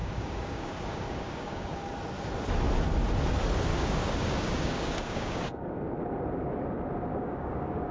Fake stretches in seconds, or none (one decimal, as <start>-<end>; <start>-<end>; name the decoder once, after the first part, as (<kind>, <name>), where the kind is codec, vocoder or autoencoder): 0.0-2.0 (codec, DAC); 3.7-5.4; 7.1-7.9